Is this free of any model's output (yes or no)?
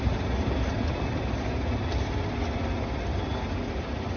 yes